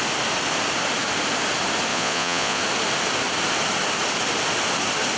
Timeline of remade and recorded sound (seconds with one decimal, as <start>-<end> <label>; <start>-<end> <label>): 0.0-1.9 recorded; 1.9-2.6 remade; 2.6-5.2 recorded